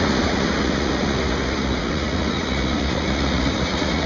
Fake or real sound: fake